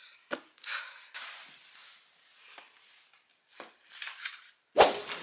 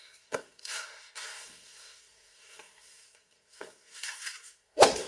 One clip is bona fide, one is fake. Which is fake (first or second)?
second